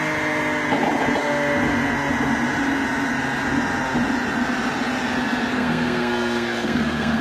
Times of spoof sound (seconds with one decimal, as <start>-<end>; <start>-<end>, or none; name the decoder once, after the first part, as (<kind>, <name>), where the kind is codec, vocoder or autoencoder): 5.5-7.2 (codec, SNAC)

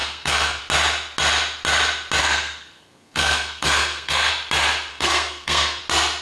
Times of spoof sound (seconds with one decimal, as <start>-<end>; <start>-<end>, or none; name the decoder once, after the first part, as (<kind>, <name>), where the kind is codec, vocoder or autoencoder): 0.0-0.6 (codec, SNAC); 2.2-4.3; 4.9-5.8

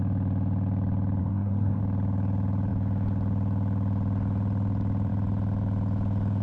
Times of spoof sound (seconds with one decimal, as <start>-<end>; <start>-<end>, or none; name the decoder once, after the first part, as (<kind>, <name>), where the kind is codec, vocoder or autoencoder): 1.2-1.8 (codec, SNAC)

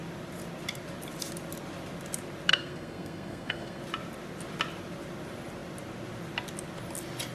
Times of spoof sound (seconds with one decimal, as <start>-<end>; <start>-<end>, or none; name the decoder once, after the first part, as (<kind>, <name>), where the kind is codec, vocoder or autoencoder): 2.5-3.8 (codec, SNAC)